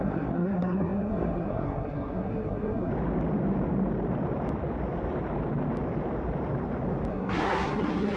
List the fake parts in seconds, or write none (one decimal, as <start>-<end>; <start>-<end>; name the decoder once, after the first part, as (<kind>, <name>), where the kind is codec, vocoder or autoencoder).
0.0-2.9 (codec, SNAC); 7.1-8.2